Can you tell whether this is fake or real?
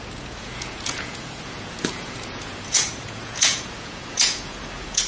fake